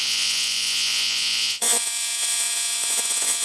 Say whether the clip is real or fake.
fake